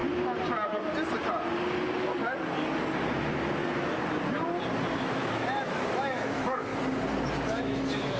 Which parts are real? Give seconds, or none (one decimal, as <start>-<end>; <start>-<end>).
0.0-4.9; 6.7-7.4